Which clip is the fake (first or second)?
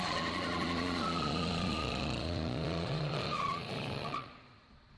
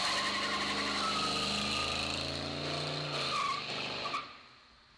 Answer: first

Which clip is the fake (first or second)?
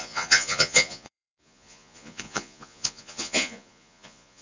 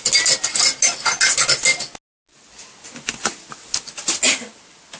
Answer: first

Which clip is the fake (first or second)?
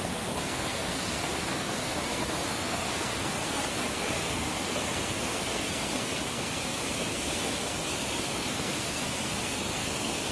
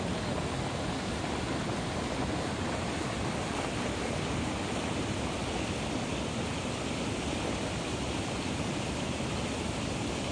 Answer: first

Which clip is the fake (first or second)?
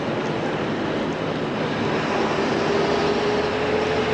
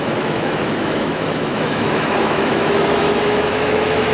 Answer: second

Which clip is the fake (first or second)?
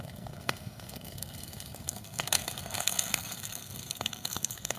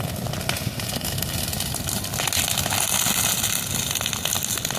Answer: first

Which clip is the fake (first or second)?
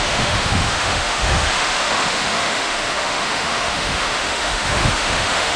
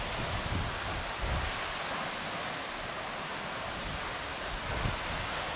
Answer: first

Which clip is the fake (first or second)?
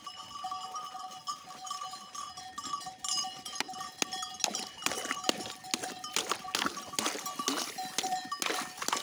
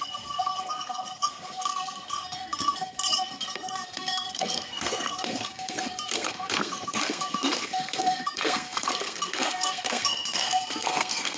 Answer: second